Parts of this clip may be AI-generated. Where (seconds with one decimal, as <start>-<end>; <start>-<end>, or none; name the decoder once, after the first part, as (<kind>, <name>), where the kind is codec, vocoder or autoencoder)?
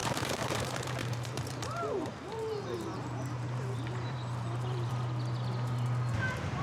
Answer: 0.0-0.6 (vocoder, BigVGAN v2); 1.0-4.9